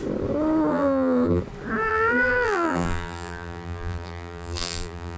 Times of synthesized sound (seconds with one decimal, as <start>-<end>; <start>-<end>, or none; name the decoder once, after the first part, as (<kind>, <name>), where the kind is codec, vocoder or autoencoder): 0.7-1.4 (vocoder, BigVGAN v2); 1.9-5.2